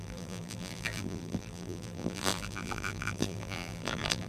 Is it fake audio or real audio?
fake